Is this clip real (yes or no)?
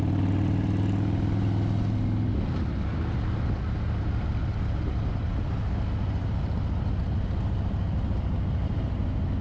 yes